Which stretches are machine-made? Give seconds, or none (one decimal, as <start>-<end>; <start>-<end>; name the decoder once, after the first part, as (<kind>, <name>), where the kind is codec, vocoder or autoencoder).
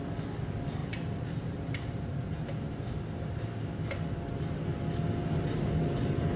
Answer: 0.8-3.6 (vocoder, BigVGAN v2); 5.2-5.7